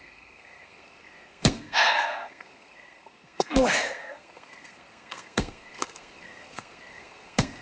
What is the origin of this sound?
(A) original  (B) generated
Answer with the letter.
B